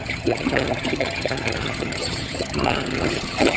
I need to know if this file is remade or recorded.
remade